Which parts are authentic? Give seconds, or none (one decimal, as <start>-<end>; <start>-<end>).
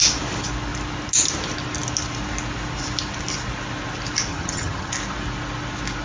0.0-4.3; 4.9-6.0